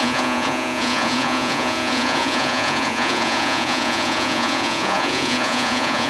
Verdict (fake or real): fake